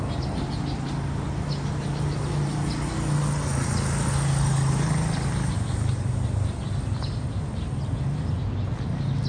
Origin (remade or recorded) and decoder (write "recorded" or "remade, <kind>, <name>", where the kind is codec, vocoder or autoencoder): recorded